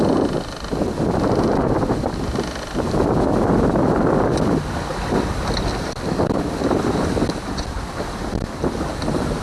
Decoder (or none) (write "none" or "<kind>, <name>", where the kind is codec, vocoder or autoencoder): none